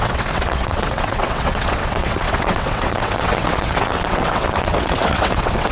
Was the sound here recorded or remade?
remade